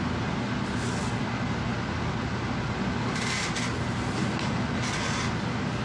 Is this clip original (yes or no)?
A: yes